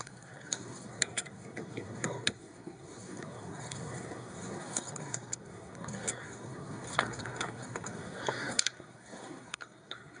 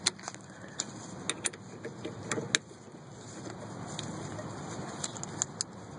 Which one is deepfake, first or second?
first